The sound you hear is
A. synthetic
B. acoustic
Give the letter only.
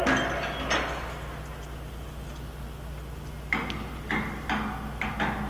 B